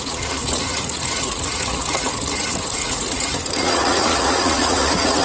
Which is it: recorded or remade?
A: remade